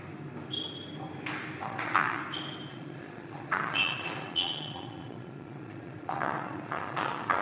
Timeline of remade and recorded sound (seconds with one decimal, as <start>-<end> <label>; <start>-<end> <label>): 0.0-1.6 recorded; 1.6-2.2 remade; 2.2-2.7 recorded; 2.7-7.4 remade